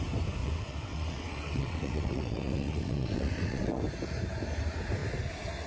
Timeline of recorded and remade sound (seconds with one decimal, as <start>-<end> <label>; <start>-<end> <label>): 0.0-0.4 recorded; 0.4-3.8 remade; 3.8-5.7 recorded